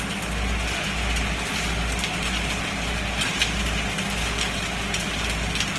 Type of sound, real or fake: real